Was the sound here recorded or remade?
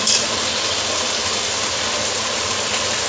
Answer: recorded